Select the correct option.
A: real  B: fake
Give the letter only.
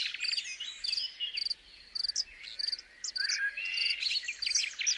A